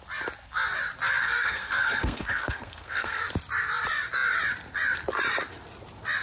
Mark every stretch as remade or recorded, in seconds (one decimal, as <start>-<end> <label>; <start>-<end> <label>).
0.0-1.2 recorded; 1.2-3.2 remade; 3.2-6.2 recorded